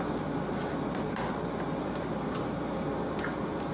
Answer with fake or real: real